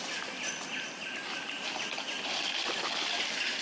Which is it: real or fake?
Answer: real